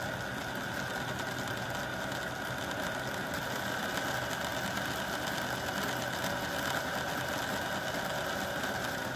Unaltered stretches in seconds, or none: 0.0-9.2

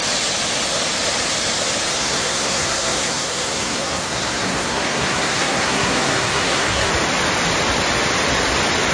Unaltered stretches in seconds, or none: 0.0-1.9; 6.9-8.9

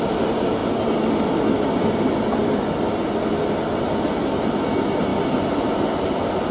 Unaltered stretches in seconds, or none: 0.0-6.5